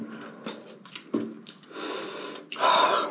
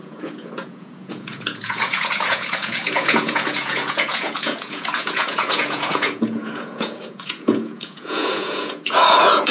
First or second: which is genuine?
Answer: first